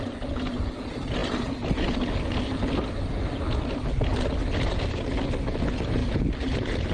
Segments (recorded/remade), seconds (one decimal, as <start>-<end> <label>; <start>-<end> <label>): 0.0-6.9 recorded